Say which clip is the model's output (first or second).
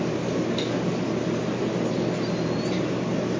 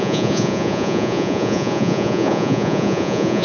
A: second